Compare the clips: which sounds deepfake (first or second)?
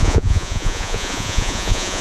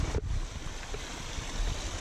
first